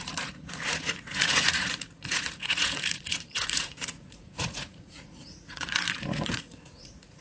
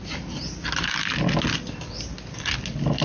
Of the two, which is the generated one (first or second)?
first